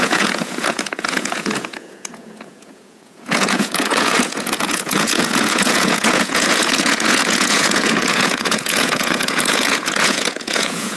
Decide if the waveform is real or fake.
fake